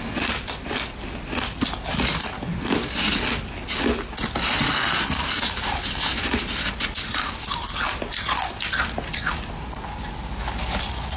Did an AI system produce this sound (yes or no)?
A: no